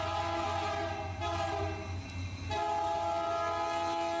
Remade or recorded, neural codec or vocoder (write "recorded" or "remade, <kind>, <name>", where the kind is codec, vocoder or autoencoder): recorded